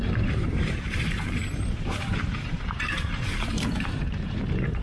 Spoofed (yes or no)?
yes